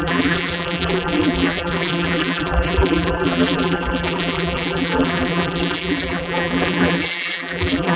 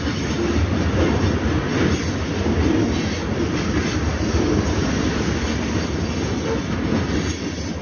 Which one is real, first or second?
second